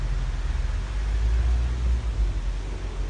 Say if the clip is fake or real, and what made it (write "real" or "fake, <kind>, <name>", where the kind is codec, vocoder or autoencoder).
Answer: real